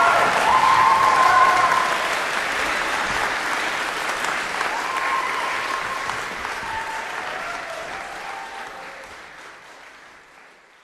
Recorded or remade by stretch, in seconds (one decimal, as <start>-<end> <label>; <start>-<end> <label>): 0.0-3.2 remade; 3.2-3.8 recorded; 3.8-10.8 remade